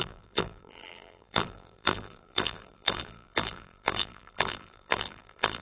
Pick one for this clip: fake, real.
fake